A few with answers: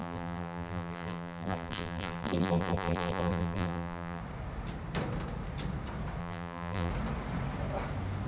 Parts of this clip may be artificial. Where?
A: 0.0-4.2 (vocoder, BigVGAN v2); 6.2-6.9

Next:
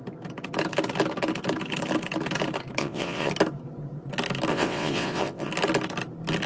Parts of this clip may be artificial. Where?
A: 2.8-3.3 (vocoder, WaveNeXt); 4.5-5.5